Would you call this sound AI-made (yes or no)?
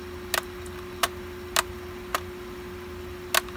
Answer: no